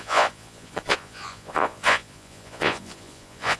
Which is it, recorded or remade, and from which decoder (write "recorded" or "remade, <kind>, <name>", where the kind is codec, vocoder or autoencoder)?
remade, vocoder, Vocos